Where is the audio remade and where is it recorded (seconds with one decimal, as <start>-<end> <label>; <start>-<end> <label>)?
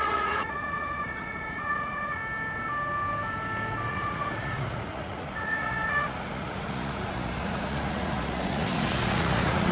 0.0-2.2 remade; 2.2-3.9 recorded; 3.9-9.7 remade